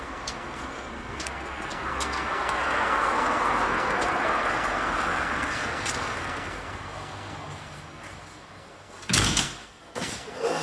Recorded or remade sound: remade